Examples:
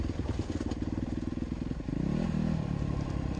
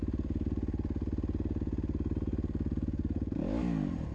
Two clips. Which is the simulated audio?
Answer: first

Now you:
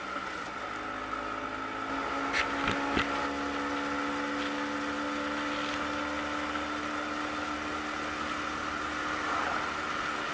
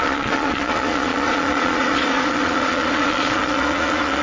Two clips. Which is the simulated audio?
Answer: second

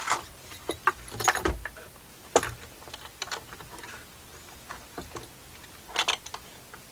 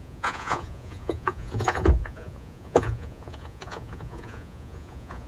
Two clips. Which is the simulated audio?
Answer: second